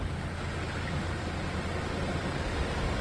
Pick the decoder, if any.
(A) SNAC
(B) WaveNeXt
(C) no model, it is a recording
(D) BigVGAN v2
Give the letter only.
C